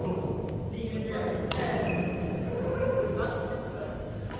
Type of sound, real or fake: real